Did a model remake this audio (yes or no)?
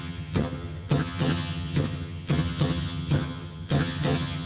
yes